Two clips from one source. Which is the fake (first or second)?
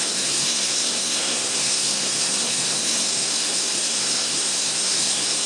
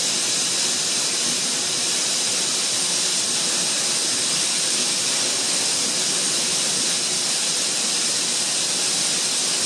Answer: first